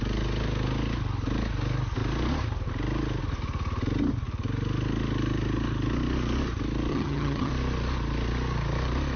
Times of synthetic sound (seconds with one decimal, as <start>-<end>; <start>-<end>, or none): 6.9-7.5